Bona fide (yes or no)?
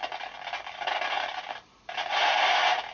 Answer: yes